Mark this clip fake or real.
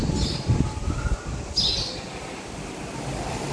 real